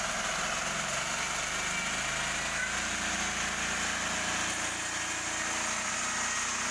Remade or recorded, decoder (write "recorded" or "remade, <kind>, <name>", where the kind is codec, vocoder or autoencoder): recorded